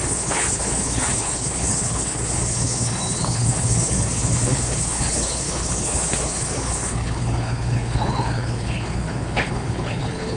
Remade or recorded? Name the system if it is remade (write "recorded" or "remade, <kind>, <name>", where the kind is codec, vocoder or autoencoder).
remade, codec, HILCodec